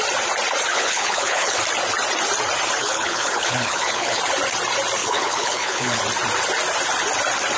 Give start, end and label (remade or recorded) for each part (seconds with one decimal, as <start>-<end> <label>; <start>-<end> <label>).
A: 0.0-0.7 recorded; 0.7-1.6 remade; 1.6-2.8 recorded; 2.8-4.2 remade; 4.2-5.0 recorded; 5.0-6.0 remade; 6.0-7.6 recorded